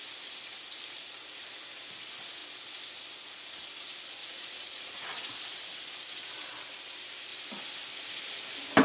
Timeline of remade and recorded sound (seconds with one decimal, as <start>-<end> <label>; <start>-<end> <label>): 0.0-4.2 recorded; 4.2-5.1 remade; 5.1-8.8 recorded